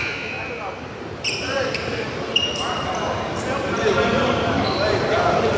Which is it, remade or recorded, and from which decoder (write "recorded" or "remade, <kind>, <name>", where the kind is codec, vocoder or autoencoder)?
recorded